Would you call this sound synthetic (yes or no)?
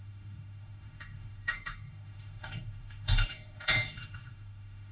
yes